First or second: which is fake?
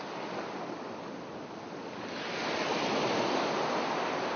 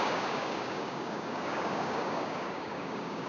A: second